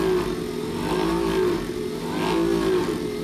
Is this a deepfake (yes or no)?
no